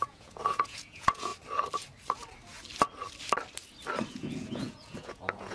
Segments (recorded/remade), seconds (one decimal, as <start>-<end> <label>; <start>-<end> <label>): 0.0-1.3 remade; 1.3-4.1 recorded; 4.1-5.5 remade